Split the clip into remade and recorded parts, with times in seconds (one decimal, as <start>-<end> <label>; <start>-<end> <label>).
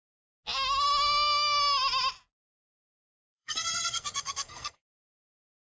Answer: 0.0-2.9 recorded; 2.9-5.1 remade; 5.1-5.8 recorded